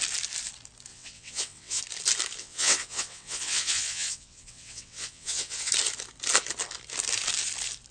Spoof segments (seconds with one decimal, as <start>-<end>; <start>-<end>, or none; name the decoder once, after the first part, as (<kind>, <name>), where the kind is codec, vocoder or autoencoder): 0.9-1.8 (vocoder, WaveNeXt); 2.4-5.7